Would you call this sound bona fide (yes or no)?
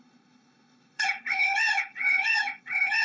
no